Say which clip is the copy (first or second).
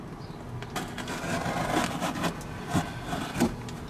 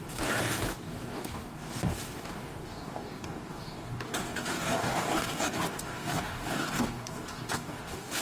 second